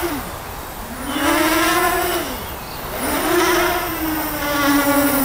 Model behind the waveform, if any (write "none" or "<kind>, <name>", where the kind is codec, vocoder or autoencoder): none